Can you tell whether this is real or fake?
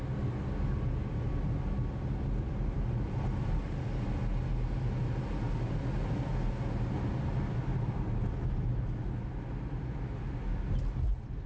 real